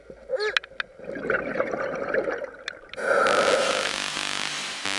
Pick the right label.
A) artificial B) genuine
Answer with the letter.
B